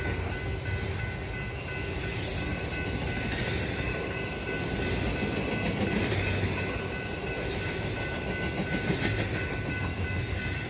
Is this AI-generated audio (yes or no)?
no